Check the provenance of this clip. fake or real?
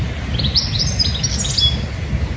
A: real